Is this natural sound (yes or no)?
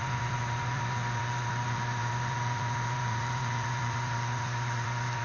no